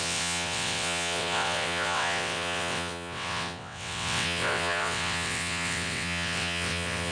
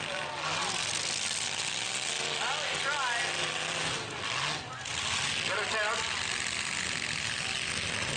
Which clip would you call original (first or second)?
second